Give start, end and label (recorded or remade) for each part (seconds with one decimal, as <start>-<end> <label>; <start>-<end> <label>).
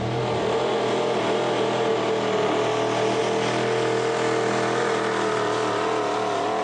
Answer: 0.0-6.6 recorded